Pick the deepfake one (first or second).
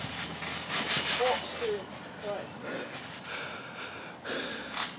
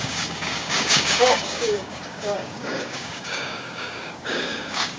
second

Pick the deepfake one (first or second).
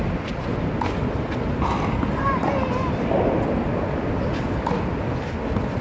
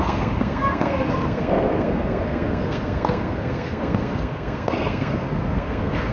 second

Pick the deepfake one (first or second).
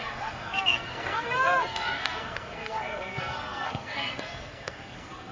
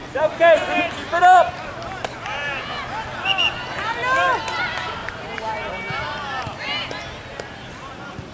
first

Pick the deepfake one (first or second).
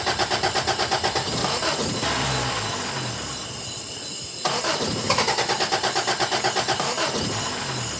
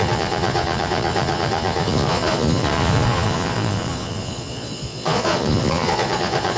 second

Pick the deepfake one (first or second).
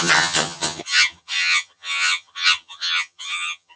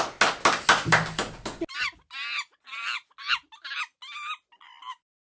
first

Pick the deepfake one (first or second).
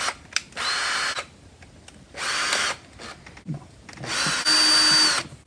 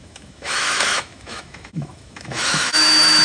second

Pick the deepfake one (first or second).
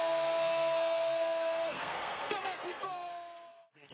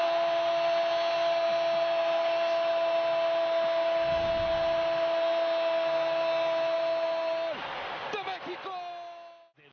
first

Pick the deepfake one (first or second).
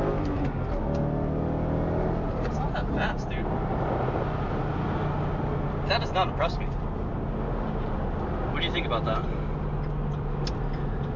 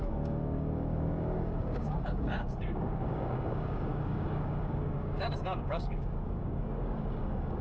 second